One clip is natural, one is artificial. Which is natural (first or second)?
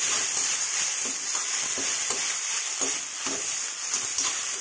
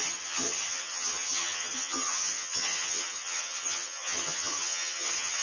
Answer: first